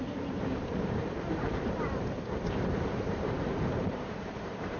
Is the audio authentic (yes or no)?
no